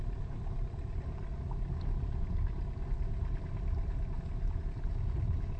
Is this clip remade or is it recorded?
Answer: recorded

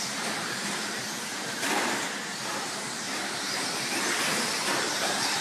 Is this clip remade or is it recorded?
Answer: remade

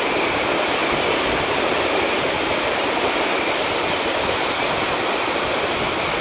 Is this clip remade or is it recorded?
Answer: recorded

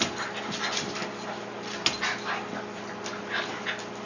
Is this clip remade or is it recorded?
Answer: recorded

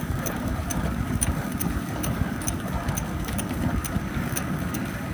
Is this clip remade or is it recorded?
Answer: remade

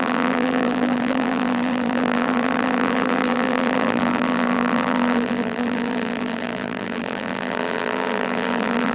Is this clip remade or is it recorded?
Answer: remade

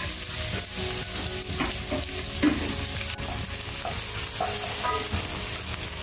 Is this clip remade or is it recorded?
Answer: recorded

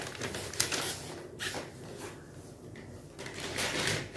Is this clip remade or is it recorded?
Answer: recorded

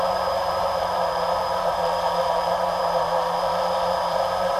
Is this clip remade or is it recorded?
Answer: remade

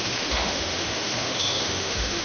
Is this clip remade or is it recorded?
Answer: remade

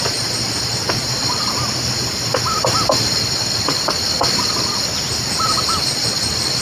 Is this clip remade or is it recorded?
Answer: recorded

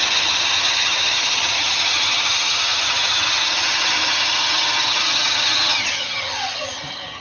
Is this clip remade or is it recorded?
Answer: remade